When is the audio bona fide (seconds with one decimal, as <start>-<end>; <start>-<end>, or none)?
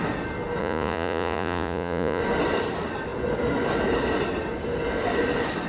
0.0-0.6; 2.2-5.7